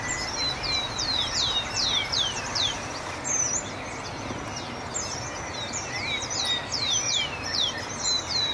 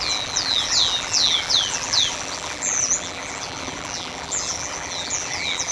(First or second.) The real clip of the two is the first